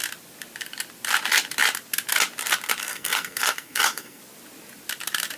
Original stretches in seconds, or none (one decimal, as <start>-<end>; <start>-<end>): 0.0-2.8; 4.2-5.4